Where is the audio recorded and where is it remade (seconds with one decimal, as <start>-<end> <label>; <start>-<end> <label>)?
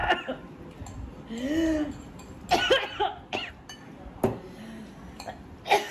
0.0-5.9 recorded